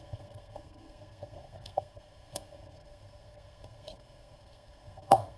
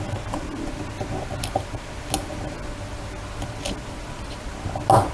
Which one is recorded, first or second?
second